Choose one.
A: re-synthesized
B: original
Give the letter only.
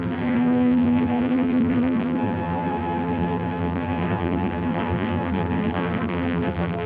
A